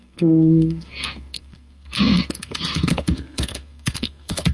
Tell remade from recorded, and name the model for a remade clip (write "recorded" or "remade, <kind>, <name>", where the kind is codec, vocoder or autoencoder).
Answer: remade, codec, SNAC